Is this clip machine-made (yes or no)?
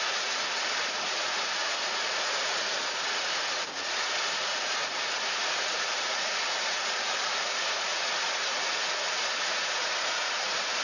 yes